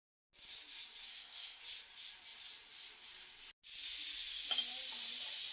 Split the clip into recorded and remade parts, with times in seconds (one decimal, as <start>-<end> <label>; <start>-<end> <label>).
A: 0.0-1.1 recorded; 1.1-1.6 remade; 1.6-5.5 recorded